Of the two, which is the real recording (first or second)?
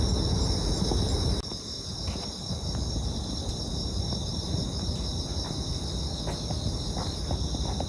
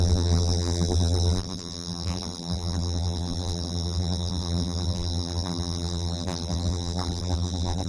first